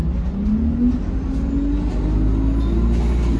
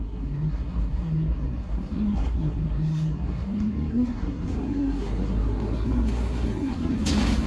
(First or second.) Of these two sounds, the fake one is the second